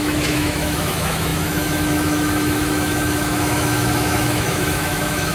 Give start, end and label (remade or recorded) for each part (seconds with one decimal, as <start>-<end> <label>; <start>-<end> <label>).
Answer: 0.0-5.3 remade